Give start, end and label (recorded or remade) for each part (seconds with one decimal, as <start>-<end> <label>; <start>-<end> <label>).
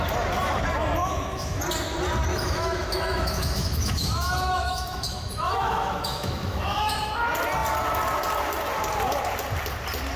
0.0-1.0 recorded; 1.0-1.6 remade; 1.6-2.3 recorded; 2.3-7.1 remade; 7.1-10.2 recorded